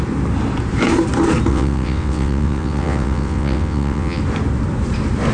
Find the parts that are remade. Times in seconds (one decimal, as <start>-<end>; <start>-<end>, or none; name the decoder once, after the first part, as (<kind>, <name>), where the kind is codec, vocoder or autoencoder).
1.5-4.2 (vocoder, WaveNeXt)